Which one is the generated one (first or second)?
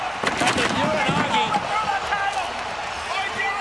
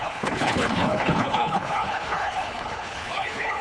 second